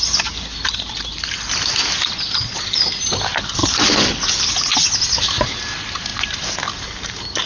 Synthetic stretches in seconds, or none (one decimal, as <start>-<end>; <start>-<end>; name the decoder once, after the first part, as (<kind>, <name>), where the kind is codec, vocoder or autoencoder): none